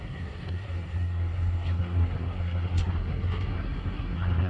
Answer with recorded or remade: remade